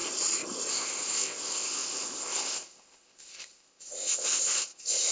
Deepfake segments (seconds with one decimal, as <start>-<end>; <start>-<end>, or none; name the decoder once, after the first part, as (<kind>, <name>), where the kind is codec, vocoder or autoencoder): 0.7-5.1 (codec, ZipCodec)